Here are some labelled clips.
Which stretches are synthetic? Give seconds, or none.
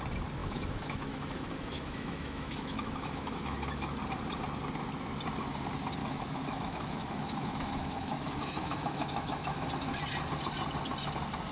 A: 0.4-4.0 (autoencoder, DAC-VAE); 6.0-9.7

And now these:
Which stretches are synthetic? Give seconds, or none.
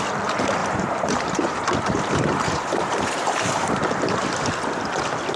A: 0.6-3.8 (vocoder, BigVGAN v2)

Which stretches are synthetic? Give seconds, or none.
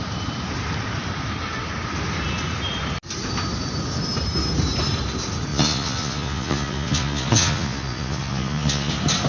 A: 5.5-8.9 (vocoder, Vocos)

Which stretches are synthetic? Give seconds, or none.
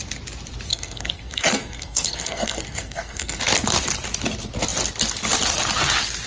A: 0.7-3.4 (codec, SNAC)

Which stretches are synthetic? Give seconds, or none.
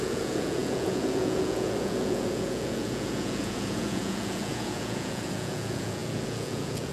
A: 0.0-6.9 (vocoder, Vocos)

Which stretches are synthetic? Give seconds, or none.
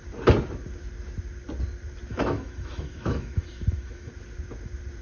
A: 2.1-4.1 (autoencoder, DAC-VAE)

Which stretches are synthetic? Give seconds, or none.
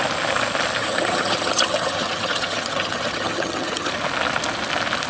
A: 0.8-3.9 (vocoder, HiFi-GAN)